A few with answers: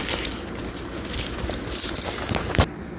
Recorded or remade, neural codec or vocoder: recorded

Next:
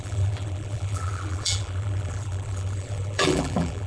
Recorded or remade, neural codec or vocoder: remade, vocoder, BigVGAN v2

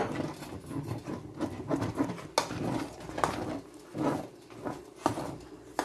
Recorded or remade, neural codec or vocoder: recorded